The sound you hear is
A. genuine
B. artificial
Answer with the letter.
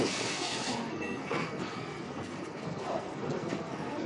B